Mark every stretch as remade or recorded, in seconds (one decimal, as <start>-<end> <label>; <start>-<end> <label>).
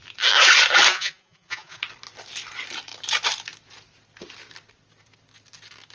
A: 0.0-0.9 recorded; 0.9-1.8 remade; 1.8-5.9 recorded